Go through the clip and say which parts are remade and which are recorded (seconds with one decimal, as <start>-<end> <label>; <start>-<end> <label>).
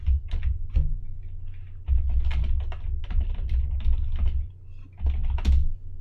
0.0-6.0 recorded